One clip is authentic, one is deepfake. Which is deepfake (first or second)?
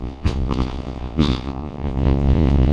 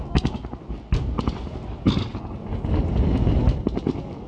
first